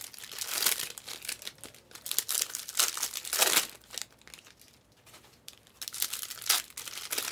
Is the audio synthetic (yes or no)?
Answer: no